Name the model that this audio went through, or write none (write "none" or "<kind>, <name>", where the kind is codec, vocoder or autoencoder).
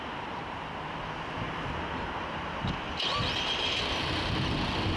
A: none